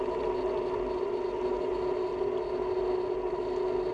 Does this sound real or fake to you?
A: real